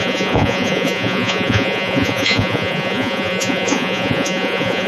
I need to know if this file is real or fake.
fake